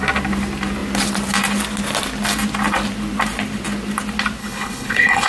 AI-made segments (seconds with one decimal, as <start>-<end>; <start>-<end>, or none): 4.4-5.3